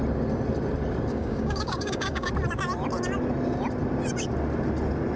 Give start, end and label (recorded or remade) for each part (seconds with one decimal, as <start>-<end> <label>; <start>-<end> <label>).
0.0-1.1 recorded; 1.1-2.3 remade; 2.3-5.2 recorded